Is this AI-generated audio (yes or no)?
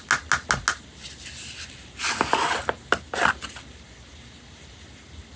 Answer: no